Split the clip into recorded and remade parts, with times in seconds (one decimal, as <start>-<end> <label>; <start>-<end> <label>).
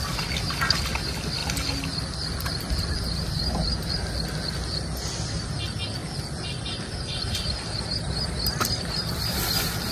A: 0.0-6.0 recorded; 6.0-9.9 remade